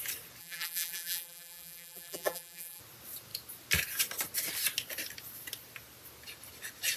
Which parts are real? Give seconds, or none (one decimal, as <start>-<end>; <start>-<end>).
0.0-0.4; 2.8-7.0